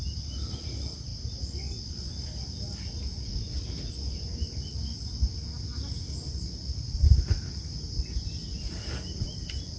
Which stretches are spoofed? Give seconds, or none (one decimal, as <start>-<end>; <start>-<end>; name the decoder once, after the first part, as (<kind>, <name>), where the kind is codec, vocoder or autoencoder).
none